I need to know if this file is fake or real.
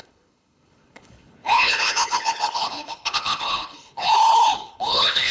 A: fake